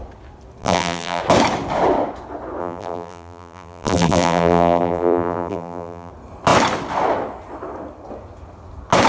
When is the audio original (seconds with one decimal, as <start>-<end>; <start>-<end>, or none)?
0.0-0.6; 1.2-2.6; 6.1-9.1